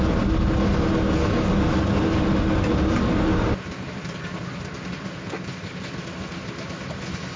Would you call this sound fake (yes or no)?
no